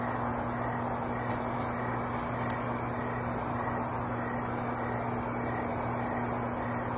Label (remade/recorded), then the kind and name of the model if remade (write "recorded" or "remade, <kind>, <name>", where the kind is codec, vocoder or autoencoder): recorded